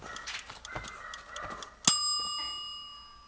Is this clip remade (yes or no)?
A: no